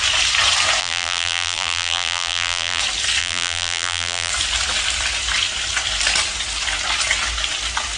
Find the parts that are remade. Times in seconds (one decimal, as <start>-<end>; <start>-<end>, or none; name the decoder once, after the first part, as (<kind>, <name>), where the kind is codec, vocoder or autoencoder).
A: 0.8-2.8 (vocoder, BigVGAN v2); 3.2-4.3